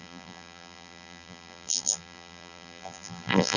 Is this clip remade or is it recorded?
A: remade